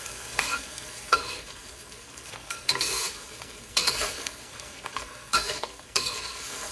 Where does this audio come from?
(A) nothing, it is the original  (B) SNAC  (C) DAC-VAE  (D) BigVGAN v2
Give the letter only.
B